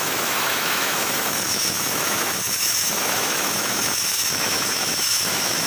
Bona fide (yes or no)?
no